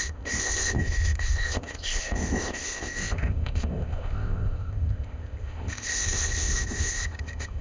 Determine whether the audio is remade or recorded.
remade